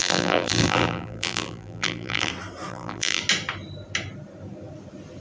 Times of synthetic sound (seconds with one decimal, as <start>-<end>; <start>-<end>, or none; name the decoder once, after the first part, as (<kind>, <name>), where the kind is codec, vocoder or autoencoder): 0.0-2.3 (vocoder, BigVGAN v2); 2.7-3.2